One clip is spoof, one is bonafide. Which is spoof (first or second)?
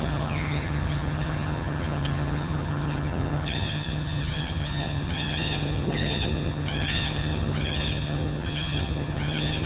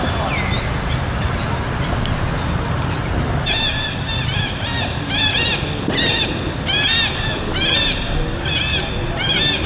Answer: first